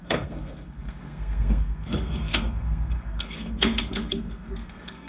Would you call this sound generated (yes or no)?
yes